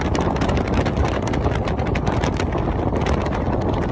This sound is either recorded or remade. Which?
recorded